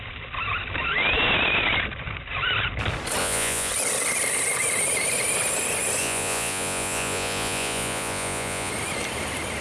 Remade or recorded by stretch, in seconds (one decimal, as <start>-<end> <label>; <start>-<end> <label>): 0.0-3.2 recorded; 3.2-3.7 remade; 3.7-6.0 recorded; 6.0-8.7 remade; 8.7-9.6 recorded